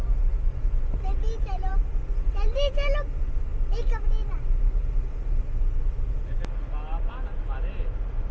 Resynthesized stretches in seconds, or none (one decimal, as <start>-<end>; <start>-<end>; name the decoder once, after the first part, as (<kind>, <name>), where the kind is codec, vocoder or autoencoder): none